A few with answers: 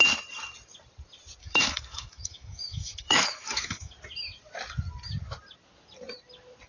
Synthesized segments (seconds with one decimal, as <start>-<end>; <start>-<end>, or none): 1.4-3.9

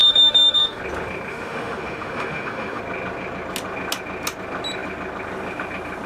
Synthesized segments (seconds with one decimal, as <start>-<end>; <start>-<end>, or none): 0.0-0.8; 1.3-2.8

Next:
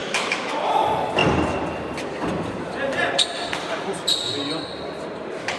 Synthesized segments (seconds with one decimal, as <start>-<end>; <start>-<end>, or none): 0.0-0.6